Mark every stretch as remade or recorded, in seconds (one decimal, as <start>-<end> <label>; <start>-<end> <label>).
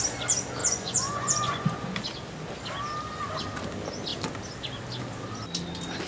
0.0-0.6 recorded; 0.6-2.0 remade; 2.0-6.1 recorded